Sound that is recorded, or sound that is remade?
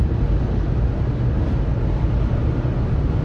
recorded